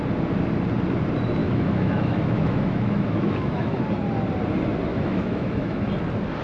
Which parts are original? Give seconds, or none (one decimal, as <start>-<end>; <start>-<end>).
0.0-1.4; 3.8-4.9; 5.9-6.4